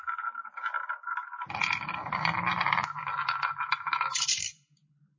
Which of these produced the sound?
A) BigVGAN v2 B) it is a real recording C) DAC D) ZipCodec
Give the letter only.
B